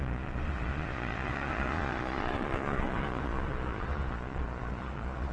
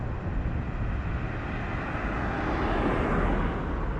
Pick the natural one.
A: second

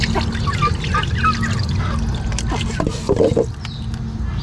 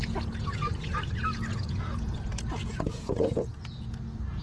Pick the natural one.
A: first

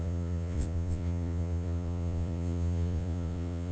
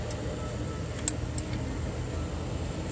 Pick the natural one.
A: second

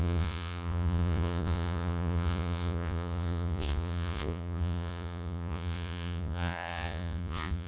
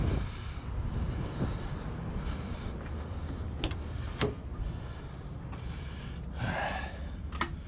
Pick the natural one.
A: second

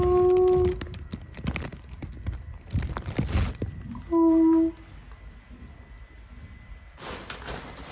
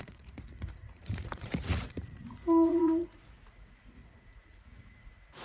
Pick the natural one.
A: first